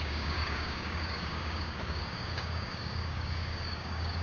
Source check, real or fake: fake